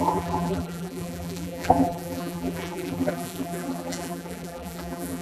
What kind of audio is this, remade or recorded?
remade